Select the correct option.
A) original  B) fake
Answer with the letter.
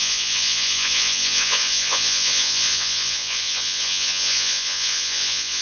B